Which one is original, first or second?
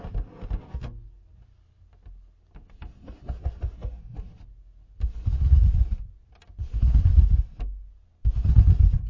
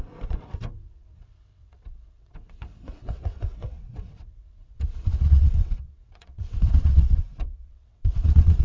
first